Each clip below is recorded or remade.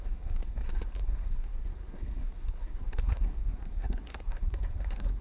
remade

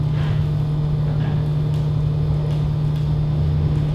recorded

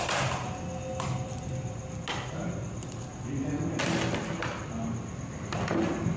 recorded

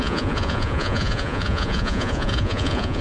remade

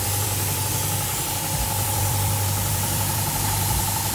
remade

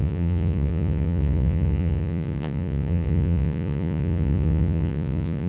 remade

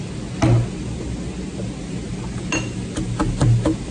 recorded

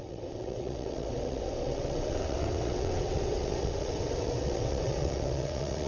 remade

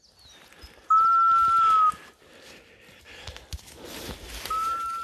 recorded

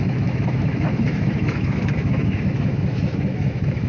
remade